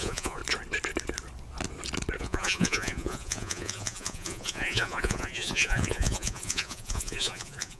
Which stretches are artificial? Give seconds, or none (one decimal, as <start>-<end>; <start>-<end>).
0.0-0.4; 2.2-7.8